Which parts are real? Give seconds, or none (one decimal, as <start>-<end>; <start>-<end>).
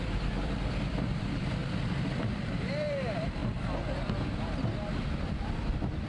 3.4-5.1